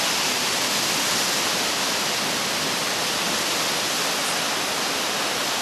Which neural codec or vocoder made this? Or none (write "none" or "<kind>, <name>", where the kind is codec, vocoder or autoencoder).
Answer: none